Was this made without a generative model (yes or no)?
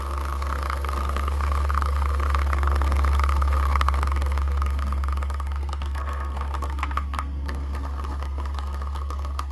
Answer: no